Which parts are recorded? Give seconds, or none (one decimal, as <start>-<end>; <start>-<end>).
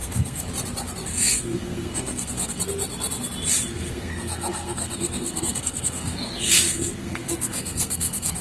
0.5-1.1; 2.6-3.7